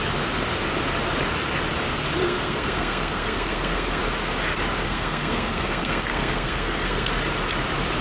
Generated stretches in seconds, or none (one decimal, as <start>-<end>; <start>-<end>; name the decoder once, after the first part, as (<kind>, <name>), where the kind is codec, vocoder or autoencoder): 2.2-4.0 (codec, SNAC); 4.8-7.1